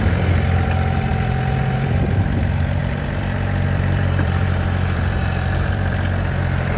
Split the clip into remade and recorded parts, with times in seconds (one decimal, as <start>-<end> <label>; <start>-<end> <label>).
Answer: 0.0-1.1 recorded; 1.1-2.4 remade; 2.4-2.8 recorded; 2.8-6.8 remade